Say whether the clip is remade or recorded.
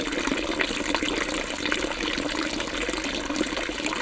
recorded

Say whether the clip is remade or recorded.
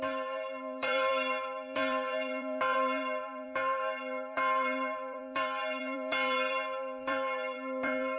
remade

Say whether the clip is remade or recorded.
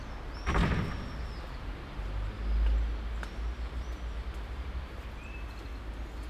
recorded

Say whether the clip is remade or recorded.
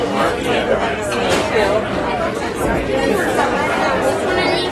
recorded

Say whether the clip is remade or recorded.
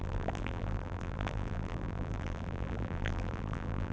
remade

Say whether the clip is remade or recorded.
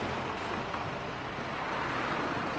recorded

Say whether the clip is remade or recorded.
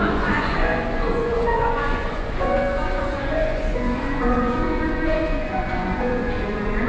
remade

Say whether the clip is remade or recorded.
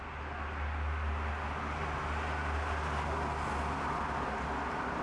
recorded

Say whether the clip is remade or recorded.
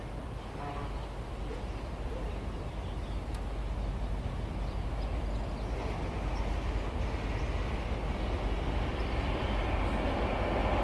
recorded